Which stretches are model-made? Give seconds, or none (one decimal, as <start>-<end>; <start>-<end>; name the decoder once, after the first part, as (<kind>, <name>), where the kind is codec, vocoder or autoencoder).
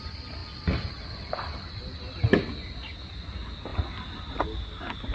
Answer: 0.4-2.3 (vocoder, BigVGAN v2); 3.7-4.4